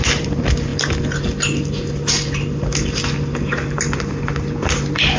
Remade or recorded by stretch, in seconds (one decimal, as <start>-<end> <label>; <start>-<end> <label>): 0.0-5.2 recorded